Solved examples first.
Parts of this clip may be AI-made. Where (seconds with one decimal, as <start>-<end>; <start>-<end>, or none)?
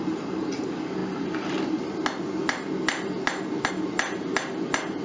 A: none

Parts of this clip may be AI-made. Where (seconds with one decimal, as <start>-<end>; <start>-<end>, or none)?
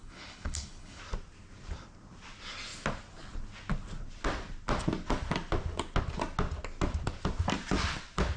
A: 0.0-1.0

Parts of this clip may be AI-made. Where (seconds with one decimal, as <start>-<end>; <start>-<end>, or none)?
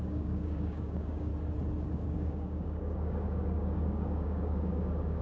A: 0.0-1.3; 1.9-5.2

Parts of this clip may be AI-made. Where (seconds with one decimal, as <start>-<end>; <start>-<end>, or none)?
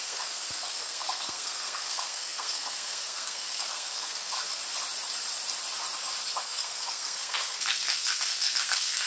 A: 0.0-4.6; 6.4-9.1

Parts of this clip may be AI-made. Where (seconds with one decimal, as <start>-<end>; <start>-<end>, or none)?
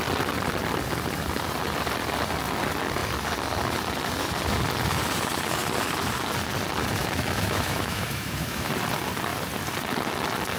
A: 7.0-8.7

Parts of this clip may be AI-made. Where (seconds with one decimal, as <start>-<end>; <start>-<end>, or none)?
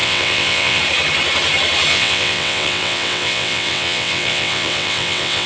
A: 0.0-0.8; 1.9-5.5